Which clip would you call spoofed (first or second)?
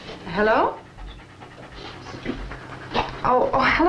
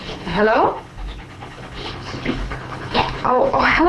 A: second